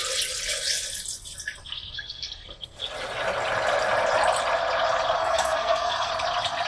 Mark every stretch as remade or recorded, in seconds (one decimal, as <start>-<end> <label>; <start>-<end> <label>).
0.0-1.6 recorded; 1.6-2.8 remade; 2.8-5.2 recorded; 5.2-6.1 remade; 6.1-6.7 recorded